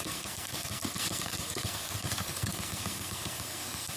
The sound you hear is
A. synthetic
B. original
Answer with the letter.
A